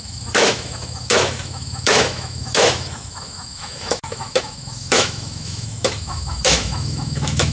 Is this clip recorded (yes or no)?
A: no